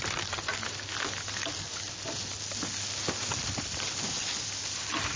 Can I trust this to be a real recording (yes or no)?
yes